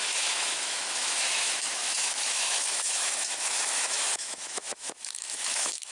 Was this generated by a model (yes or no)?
yes